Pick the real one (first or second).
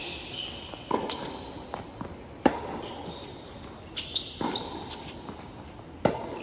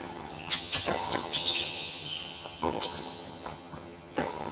first